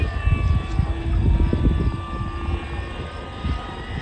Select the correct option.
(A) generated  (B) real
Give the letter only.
B